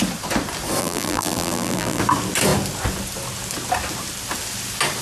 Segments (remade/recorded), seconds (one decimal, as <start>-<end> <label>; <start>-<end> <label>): 0.0-0.8 recorded; 0.8-2.0 remade; 2.0-5.0 recorded